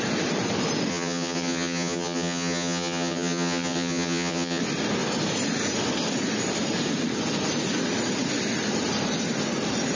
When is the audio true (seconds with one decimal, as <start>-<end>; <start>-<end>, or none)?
0.0-0.9; 4.6-9.9